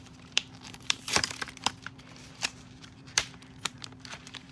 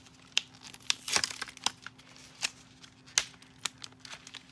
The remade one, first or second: first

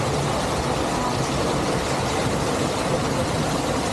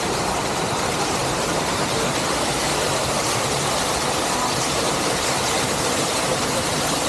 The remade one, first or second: second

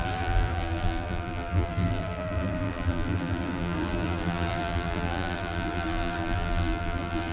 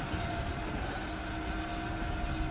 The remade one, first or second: first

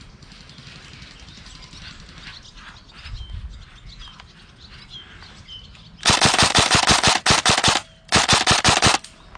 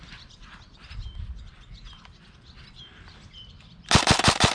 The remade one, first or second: second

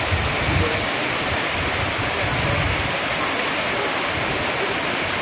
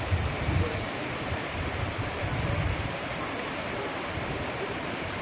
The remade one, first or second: second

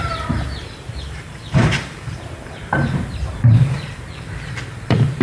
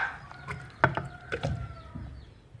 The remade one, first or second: first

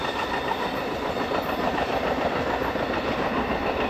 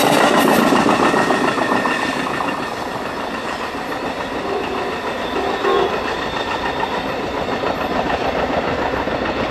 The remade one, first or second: second